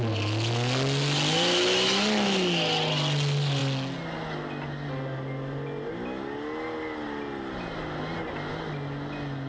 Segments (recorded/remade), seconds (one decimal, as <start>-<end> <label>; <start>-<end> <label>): 0.0-9.5 recorded